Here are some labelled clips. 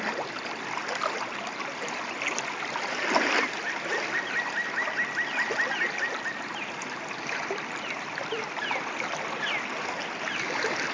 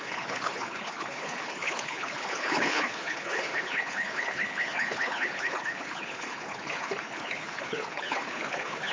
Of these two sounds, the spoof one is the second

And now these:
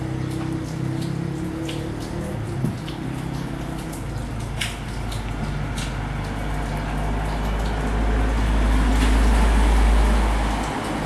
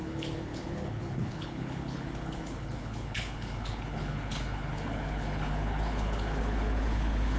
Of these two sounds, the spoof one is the second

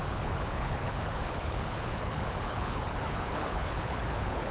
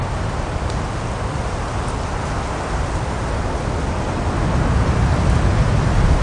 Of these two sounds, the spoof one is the first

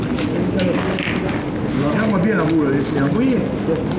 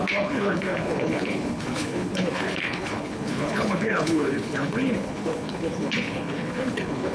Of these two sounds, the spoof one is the second